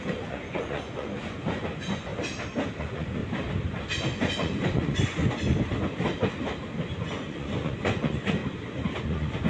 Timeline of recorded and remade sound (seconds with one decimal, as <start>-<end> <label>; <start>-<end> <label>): 0.0-2.1 remade; 2.1-2.8 recorded; 2.8-3.2 remade; 3.2-4.2 recorded; 4.2-5.2 remade; 5.2-7.0 recorded; 7.0-8.4 remade; 8.4-9.0 recorded; 9.0-9.5 remade